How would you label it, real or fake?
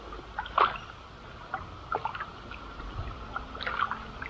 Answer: real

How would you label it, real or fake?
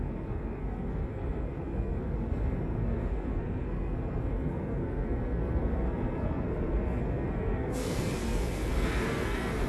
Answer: fake